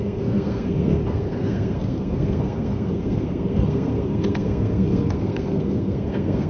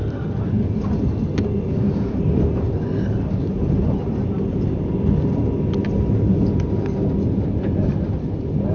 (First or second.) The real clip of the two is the second